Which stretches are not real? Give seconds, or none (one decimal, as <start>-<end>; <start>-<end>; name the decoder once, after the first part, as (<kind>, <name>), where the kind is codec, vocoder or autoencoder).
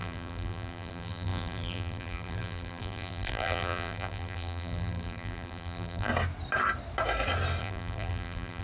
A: 0.0-6.1 (vocoder, BigVGAN v2); 7.6-8.6